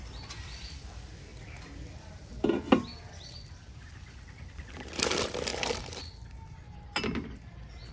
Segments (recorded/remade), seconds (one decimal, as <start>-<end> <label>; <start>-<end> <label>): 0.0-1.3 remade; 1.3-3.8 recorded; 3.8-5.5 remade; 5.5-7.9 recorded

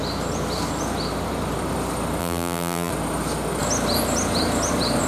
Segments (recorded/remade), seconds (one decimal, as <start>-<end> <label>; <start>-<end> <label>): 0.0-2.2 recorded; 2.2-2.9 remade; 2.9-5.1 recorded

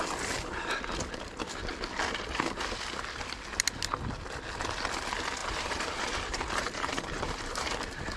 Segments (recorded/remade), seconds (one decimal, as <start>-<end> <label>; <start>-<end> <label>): 0.0-5.4 recorded; 5.4-7.7 remade; 7.7-8.2 recorded

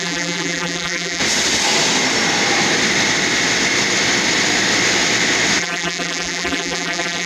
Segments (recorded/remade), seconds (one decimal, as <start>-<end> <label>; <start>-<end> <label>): 0.0-1.2 remade; 1.2-5.6 recorded; 5.6-7.3 remade

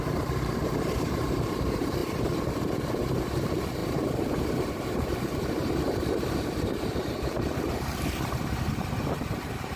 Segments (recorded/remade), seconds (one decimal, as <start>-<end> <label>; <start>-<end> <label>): 0.0-2.0 remade; 2.0-2.9 recorded; 2.9-9.8 remade

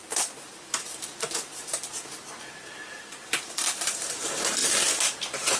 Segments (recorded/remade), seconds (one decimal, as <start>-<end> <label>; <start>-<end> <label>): 0.0-5.6 remade

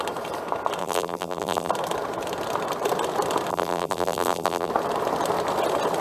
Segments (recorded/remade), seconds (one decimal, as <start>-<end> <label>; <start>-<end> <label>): 0.0-0.8 recorded; 0.8-1.7 remade; 1.7-3.5 recorded; 3.5-4.7 remade; 4.7-6.0 recorded